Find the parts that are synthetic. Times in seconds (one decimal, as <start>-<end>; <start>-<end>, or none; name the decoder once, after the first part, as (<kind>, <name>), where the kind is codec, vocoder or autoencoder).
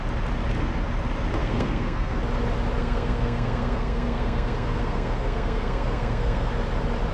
1.4-2.2 (codec, SNAC); 2.8-6.5